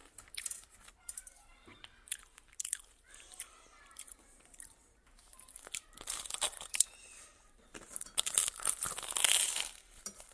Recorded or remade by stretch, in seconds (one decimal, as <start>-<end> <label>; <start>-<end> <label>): 0.0-10.3 remade